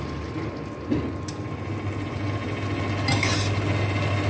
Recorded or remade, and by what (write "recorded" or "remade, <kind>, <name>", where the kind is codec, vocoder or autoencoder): recorded